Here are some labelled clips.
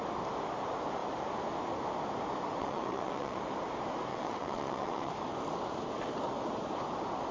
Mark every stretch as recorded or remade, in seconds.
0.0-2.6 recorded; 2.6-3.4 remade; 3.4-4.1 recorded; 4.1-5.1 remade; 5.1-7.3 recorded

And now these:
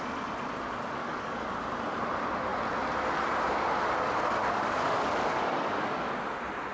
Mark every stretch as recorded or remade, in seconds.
0.0-1.0 recorded; 1.0-1.5 remade; 1.5-4.4 recorded; 4.4-6.1 remade; 6.1-6.7 recorded